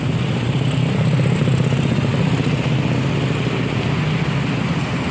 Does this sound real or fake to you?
real